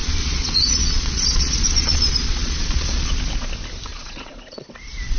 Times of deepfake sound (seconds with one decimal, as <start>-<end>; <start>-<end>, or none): 0.0-3.1; 3.9-4.7